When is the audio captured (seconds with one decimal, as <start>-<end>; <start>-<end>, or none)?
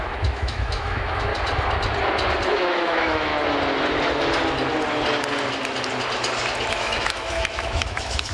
1.3-2.5; 3.3-6.7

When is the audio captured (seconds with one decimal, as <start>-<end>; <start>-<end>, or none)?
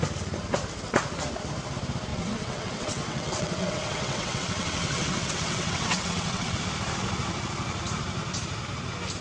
0.0-2.1; 6.6-9.2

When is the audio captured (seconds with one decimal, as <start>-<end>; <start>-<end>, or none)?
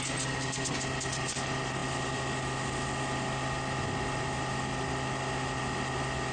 0.0-6.3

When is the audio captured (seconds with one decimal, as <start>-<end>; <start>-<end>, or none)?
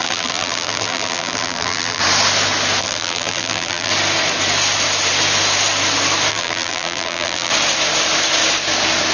2.0-2.8; 3.9-6.3; 7.5-9.1